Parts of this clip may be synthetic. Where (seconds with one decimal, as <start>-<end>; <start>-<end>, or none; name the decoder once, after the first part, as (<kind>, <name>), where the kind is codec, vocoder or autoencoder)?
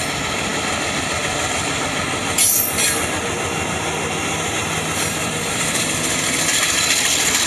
5.2-6.8 (vocoder, BigVGAN v2)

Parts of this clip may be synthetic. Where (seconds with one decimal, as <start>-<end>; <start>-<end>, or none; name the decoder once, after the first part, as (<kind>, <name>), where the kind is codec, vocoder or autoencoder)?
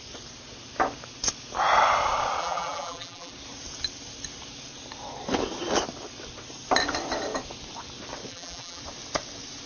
2.4-3.3 (vocoder, BigVGAN v2); 8.3-8.8